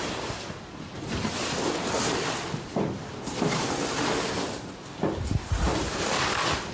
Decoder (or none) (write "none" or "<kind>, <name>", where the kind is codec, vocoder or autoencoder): none